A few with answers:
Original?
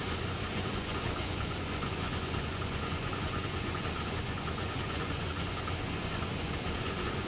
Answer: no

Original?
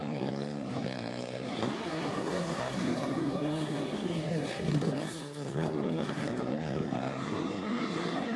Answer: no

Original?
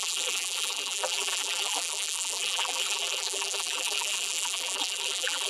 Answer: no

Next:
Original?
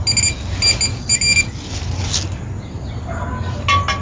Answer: yes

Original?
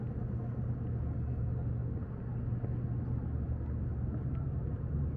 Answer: yes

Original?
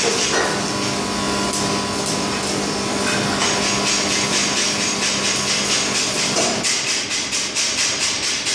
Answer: yes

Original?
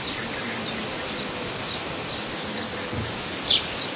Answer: yes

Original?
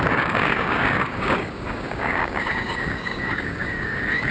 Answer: no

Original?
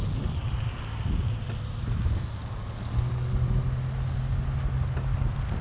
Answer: yes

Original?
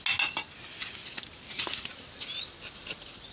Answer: yes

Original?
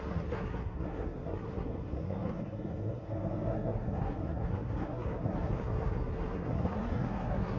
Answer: no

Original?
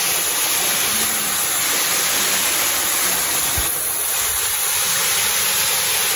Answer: yes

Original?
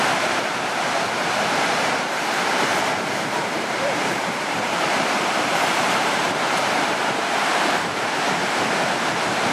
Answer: no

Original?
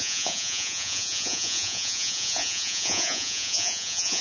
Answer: no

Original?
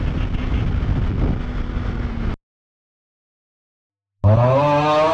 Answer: yes